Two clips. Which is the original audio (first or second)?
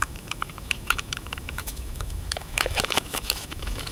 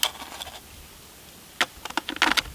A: second